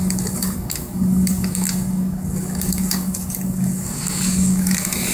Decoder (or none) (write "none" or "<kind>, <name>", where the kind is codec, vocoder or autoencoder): codec, DAC